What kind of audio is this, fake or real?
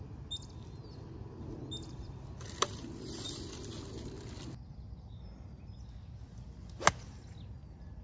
real